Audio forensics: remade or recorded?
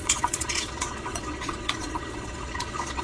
remade